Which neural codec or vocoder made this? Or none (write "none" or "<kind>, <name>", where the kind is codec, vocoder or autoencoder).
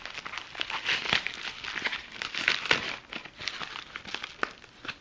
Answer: none